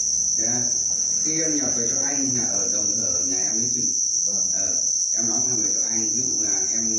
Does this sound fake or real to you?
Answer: real